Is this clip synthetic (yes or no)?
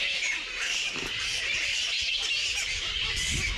no